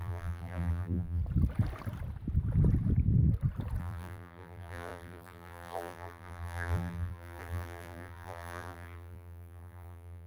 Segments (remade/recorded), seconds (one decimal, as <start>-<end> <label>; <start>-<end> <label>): 0.0-1.2 remade; 1.2-3.8 recorded; 3.8-10.3 remade